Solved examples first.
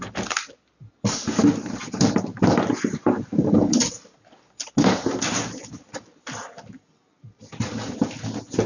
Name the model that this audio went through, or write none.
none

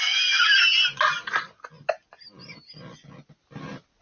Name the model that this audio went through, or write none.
none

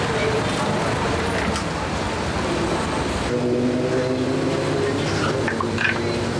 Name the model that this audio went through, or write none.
none